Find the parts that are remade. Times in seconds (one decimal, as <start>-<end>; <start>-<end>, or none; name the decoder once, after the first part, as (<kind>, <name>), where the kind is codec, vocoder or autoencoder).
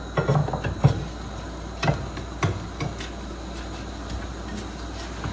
none